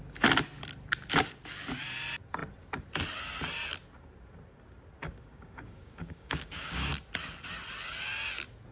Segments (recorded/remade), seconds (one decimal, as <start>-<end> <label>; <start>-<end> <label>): 0.0-5.0 recorded; 5.0-6.9 remade; 6.9-8.7 recorded